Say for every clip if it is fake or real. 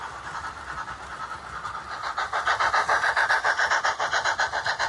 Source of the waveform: real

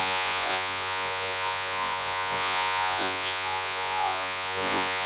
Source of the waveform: fake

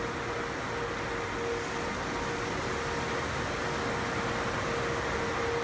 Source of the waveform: real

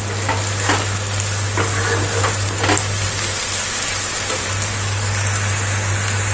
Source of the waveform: real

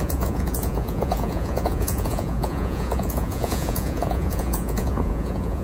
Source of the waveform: fake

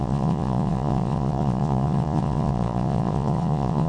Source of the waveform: fake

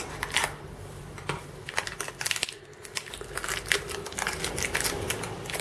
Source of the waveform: real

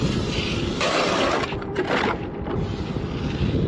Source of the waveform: real